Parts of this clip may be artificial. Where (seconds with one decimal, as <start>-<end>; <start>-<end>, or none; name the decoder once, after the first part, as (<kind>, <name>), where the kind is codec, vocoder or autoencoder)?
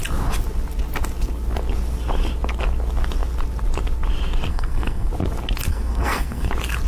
4.5-5.1 (codec, SNAC); 5.7-6.5